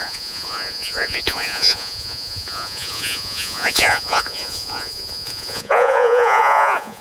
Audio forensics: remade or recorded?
remade